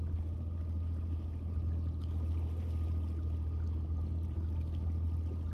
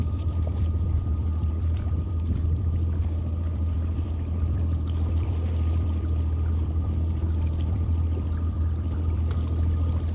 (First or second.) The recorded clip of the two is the first